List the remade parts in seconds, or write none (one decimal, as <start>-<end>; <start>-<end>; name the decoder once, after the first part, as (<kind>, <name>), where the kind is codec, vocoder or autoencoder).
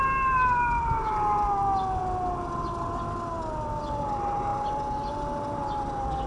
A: none